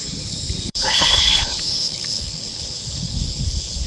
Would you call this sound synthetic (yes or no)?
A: yes